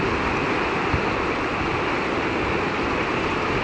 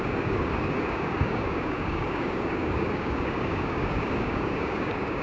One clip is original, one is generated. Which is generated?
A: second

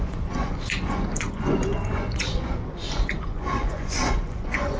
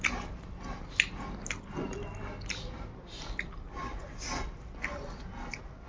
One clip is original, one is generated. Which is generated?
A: first